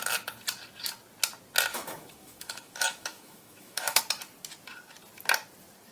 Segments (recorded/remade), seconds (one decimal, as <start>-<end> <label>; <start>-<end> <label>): 0.0-1.7 recorded; 1.7-4.0 remade; 4.0-5.9 recorded